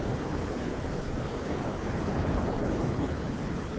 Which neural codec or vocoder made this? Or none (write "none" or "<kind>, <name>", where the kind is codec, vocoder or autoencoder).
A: codec, HILCodec